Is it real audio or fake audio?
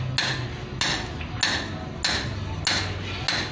real